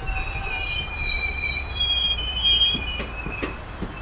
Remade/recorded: remade